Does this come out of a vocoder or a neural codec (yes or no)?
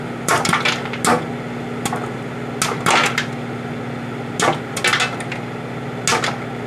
no